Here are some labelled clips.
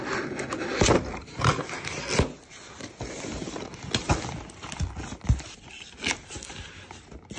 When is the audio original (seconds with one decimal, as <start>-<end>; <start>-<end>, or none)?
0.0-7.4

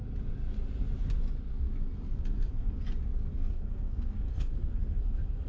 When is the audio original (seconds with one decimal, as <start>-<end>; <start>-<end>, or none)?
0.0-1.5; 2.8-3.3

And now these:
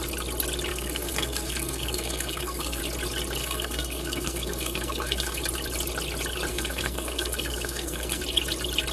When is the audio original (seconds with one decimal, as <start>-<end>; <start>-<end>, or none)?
0.0-0.7; 2.8-3.4; 5.4-6.5; 8.2-8.9

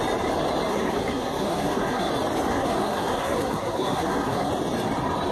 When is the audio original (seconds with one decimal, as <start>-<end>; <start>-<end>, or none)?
0.0-0.7; 2.1-2.5; 4.5-5.3

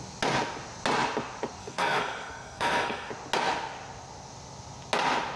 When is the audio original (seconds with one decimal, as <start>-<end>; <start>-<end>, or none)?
0.0-1.6; 3.1-5.4

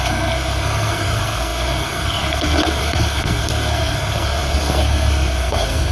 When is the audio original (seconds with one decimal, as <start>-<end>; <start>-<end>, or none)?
none

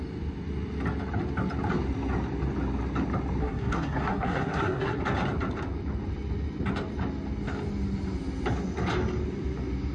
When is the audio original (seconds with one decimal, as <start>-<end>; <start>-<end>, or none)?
0.0-3.4; 5.0-9.9

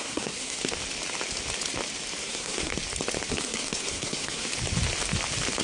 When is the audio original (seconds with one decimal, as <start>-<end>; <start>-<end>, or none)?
0.6-2.2; 2.7-3.3; 4.5-5.6